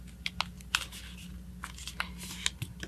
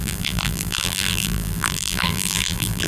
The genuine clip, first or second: first